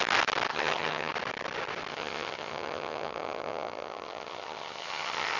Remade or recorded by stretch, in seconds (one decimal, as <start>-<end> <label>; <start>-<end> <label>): 0.0-0.5 recorded; 0.5-1.1 remade; 1.1-1.9 recorded; 1.9-5.4 remade